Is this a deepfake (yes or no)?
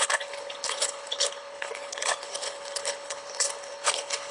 yes